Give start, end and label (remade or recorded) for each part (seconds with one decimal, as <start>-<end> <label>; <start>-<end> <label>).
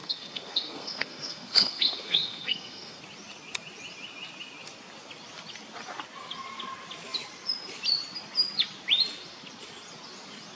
0.0-3.0 remade; 3.0-10.5 recorded